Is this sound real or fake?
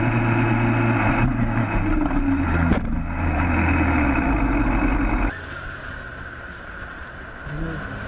real